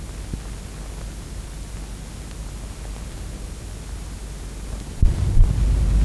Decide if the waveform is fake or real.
real